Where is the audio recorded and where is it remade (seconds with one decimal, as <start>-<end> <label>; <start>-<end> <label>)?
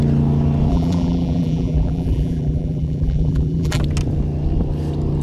0.0-0.7 recorded; 0.7-3.8 remade; 3.8-5.2 recorded